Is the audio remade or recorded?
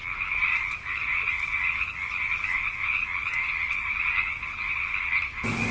recorded